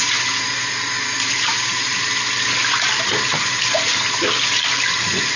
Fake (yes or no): no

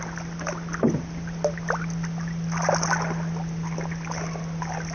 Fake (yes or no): no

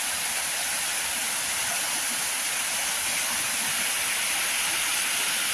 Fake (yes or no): no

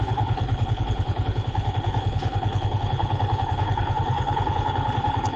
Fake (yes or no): yes